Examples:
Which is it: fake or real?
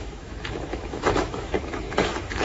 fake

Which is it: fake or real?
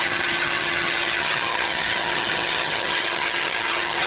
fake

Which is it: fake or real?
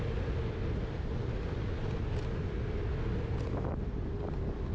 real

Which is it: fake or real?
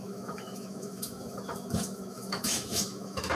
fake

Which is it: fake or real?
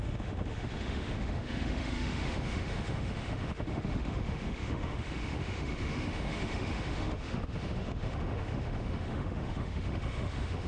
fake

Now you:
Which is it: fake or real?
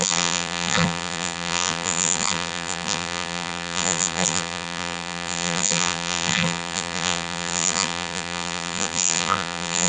fake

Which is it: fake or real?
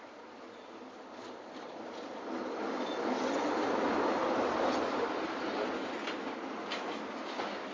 real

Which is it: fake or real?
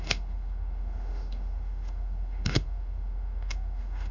fake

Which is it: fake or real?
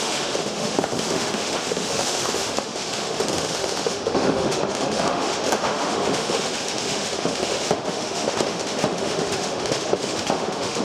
fake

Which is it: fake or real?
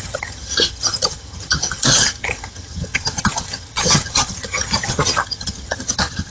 fake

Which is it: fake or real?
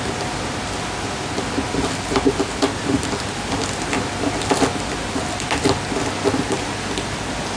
real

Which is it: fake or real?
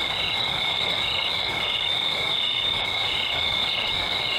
fake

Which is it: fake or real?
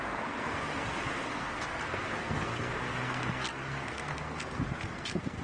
fake